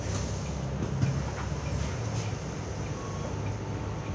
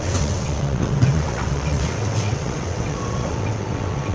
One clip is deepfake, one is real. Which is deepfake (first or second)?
second